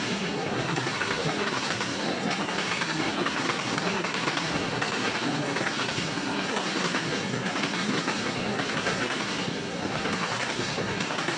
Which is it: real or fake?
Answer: fake